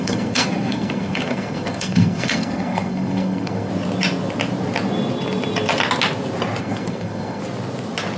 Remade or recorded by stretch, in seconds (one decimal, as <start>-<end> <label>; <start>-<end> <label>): 0.0-3.7 remade; 3.7-6.6 recorded; 6.6-7.4 remade; 7.4-8.2 recorded